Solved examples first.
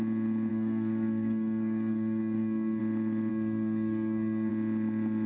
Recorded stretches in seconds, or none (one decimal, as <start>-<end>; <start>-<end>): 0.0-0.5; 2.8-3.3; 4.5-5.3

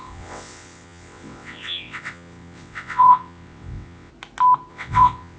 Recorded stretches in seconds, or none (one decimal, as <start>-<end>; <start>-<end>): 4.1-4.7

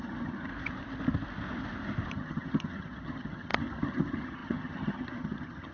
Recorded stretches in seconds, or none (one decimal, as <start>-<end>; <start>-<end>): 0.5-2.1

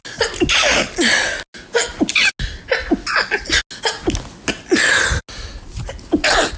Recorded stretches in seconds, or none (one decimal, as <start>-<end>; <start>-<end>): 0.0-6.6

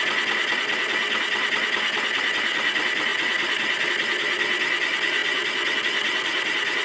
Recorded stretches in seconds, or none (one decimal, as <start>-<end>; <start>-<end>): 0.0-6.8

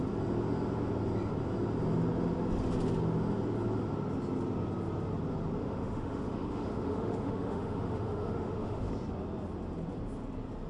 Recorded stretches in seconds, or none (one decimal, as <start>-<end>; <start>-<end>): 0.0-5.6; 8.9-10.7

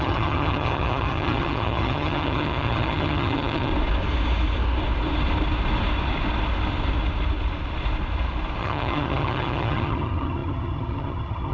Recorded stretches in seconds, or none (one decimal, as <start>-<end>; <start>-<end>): 3.7-8.6

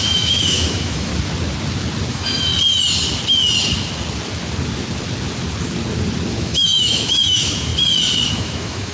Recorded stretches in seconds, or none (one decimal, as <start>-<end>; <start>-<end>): 1.1-2.1; 2.5-6.3; 7.7-8.3